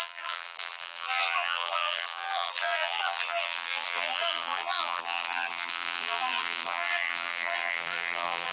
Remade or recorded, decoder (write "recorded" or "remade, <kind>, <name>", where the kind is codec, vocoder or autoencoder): remade, vocoder, BigVGAN v2